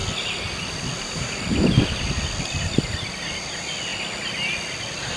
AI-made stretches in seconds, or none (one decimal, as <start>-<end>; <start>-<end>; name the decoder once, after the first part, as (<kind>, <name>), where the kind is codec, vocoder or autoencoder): none